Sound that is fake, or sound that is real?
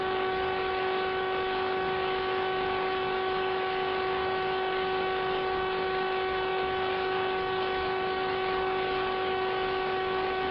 fake